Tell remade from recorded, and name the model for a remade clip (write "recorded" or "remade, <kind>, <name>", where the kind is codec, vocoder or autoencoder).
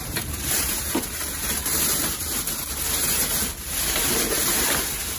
remade, vocoder, BigVGAN v2